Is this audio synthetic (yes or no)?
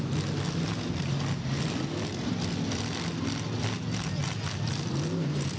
no